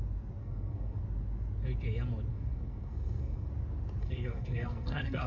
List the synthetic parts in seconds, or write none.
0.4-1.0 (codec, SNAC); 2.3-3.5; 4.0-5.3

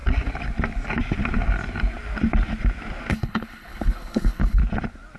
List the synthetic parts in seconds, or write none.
3.1-4.6 (codec, HILCodec)

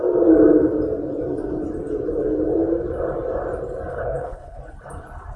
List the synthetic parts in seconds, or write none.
3.9-4.6 (codec, HILCodec)

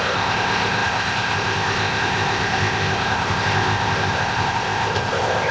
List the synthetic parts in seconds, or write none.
0.0-5.5 (codec, ZipCodec)

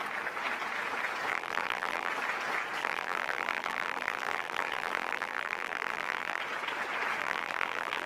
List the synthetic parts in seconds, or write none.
1.3-2.1 (vocoder, BigVGAN v2); 2.8-6.4; 7.2-8.1